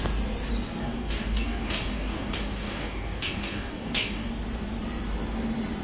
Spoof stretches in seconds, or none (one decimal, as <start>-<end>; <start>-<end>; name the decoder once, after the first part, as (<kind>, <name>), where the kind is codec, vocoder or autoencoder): 0.8-4.3 (codec, DAC)